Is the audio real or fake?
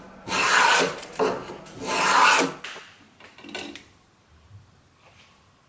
real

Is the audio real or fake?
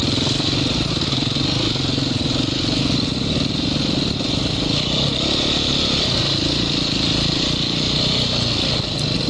real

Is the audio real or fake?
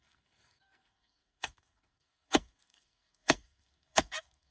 fake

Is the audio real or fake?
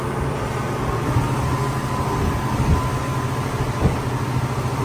real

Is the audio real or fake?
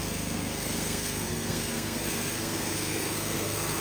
fake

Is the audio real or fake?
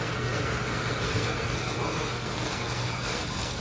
fake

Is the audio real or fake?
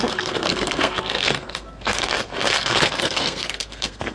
fake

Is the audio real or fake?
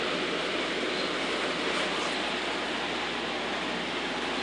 real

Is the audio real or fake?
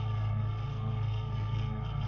fake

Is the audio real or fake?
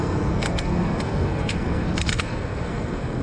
fake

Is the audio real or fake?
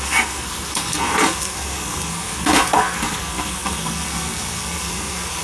fake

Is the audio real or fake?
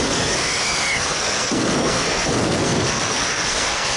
fake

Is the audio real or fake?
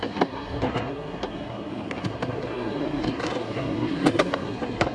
fake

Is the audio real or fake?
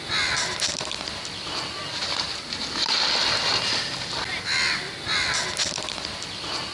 real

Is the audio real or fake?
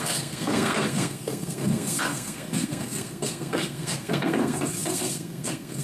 fake